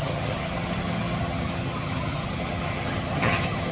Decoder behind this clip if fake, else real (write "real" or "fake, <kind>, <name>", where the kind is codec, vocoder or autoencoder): fake, vocoder, HiFi-GAN